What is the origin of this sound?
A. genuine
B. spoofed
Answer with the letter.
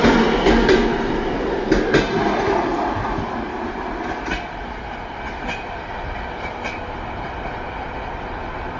A